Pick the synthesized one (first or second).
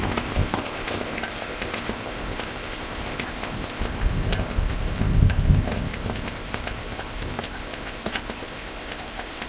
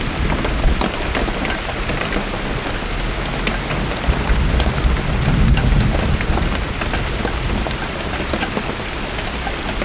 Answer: first